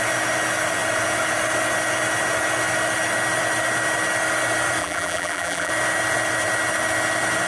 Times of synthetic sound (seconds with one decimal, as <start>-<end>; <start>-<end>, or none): 4.8-5.7

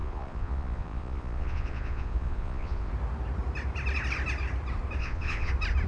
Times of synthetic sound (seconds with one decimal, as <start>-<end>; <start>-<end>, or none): 0.0-2.9; 5.0-5.5

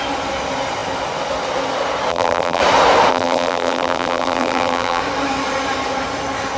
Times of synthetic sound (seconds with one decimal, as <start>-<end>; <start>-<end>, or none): 2.1-2.6; 3.1-5.0

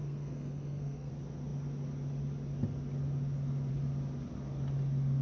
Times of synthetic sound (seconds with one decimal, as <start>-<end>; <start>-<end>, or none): 0.0-1.1

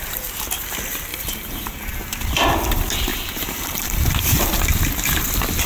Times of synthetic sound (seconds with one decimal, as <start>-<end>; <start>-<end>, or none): 1.1-1.9; 3.1-4.1